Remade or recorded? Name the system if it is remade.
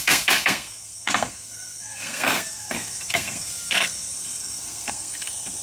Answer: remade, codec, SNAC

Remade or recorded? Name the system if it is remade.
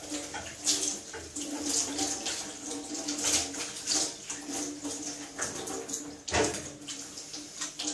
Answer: recorded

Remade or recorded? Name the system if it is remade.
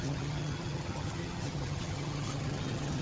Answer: remade, vocoder, HiFi-GAN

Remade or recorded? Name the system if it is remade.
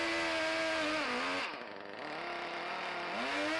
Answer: recorded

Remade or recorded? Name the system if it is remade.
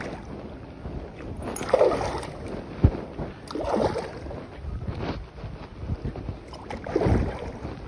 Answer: recorded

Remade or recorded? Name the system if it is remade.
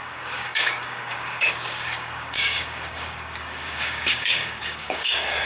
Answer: remade, codec, DAC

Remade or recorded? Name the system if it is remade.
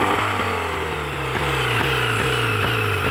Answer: recorded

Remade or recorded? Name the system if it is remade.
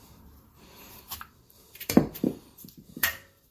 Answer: remade, vocoder, BigVGAN v2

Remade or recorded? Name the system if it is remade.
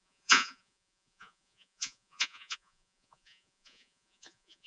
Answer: remade, vocoder, Vocos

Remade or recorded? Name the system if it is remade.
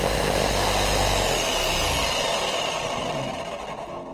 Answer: recorded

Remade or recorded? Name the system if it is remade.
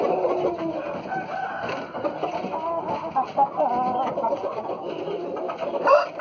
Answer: recorded